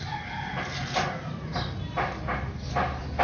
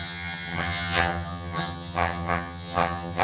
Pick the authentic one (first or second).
first